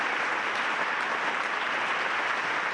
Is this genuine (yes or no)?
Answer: yes